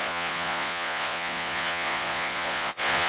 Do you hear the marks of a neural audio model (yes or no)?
yes